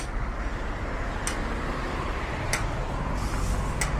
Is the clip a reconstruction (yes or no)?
no